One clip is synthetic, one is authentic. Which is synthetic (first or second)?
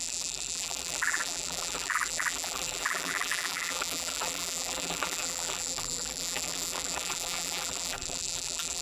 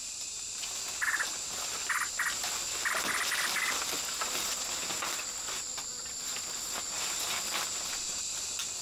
first